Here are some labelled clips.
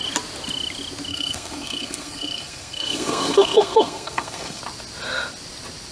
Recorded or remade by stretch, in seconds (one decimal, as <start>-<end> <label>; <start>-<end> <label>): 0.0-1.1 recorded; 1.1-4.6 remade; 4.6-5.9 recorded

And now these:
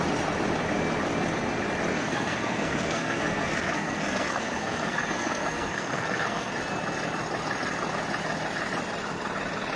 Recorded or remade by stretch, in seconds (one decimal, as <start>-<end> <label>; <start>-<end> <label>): 0.0-1.9 recorded; 1.9-6.5 remade; 6.5-9.8 recorded

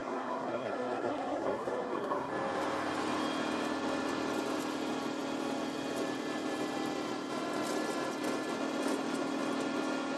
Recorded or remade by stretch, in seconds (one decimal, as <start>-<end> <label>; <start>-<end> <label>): 0.0-2.3 remade; 2.3-10.2 recorded

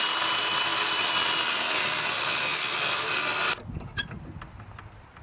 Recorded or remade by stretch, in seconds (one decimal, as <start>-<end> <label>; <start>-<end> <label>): 0.0-5.2 recorded

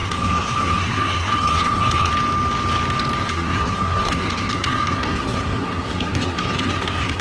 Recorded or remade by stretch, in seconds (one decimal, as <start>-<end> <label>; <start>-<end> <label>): 0.0-2.1 remade; 2.1-3.2 recorded; 3.2-7.2 remade